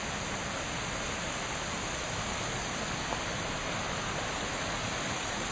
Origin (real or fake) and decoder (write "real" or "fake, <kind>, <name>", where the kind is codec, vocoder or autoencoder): real